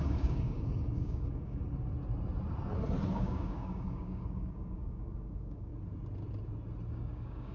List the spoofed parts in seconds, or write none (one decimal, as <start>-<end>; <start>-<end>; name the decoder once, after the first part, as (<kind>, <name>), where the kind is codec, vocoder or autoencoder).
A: 0.0-1.6 (codec, DAC); 3.1-5.7; 6.9-7.5